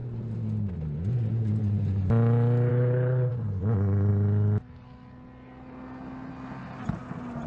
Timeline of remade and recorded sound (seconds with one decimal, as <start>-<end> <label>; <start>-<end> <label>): 0.0-2.7 recorded; 2.7-3.3 remade; 3.3-7.5 recorded